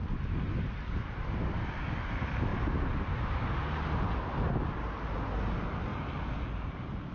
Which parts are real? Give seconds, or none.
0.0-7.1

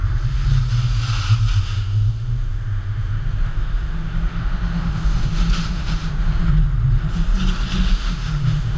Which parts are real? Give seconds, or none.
0.0-1.6; 6.4-7.8

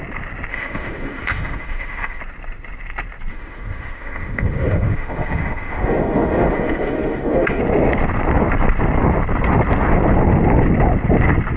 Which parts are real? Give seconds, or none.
0.0-0.5; 2.2-3.3; 7.6-11.6

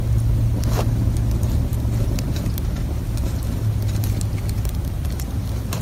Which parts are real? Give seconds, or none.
0.0-5.8

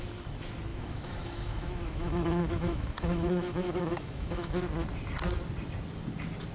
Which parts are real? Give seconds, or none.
0.0-0.7; 4.5-6.5

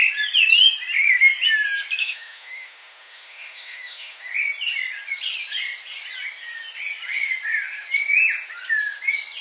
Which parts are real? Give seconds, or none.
0.0-2.0; 4.3-9.4

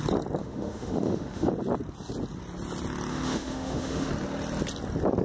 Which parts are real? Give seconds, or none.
0.0-0.4; 1.5-3.1; 4.1-5.2